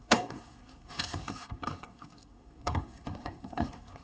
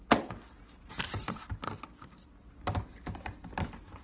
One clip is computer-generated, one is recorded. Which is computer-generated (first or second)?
first